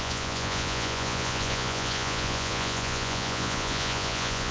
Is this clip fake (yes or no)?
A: yes